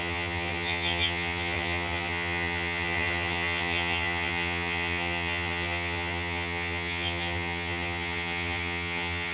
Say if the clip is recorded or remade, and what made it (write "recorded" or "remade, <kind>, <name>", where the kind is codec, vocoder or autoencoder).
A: remade, vocoder, HiFi-GAN